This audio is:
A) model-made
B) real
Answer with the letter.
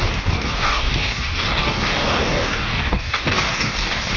A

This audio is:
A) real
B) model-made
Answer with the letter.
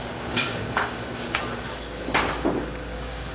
B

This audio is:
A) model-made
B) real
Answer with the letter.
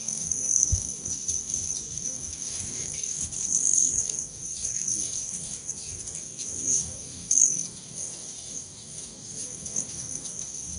A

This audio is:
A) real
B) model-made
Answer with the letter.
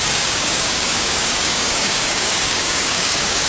B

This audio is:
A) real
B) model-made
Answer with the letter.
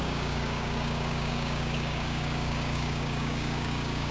B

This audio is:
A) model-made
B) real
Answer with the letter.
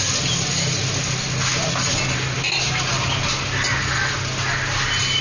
B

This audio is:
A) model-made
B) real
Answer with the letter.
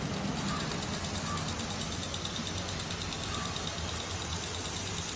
B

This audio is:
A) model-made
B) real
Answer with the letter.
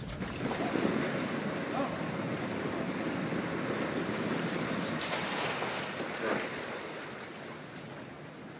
B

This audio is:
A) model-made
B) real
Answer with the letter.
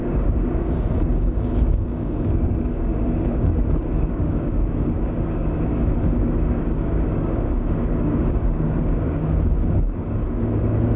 A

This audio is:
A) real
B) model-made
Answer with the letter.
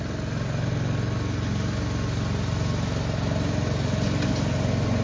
A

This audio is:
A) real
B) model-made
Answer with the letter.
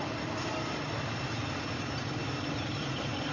A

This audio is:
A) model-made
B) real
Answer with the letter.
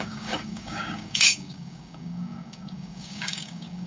A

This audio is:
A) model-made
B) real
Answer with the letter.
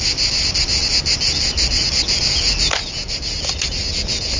B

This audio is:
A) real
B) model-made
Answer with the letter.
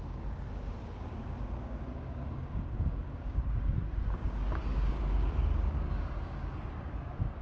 B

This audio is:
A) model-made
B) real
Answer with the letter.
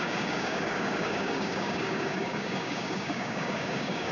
A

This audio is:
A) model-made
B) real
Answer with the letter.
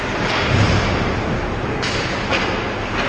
B